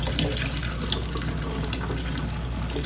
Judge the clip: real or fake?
real